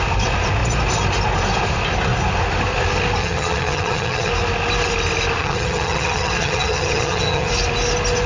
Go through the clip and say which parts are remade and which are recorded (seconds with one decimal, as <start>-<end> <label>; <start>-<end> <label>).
0.0-3.2 recorded; 3.2-4.3 remade; 4.3-5.4 recorded; 5.4-7.5 remade; 7.5-8.3 recorded